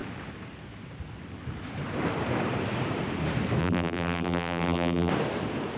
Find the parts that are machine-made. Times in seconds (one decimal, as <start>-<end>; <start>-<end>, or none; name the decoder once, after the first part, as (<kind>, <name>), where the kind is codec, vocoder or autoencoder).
3.6-5.1 (vocoder, BigVGAN v2)